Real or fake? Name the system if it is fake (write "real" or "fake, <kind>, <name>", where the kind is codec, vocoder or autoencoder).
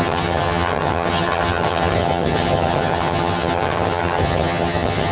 fake, vocoder, HiFi-GAN